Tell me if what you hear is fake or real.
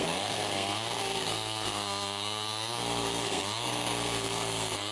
fake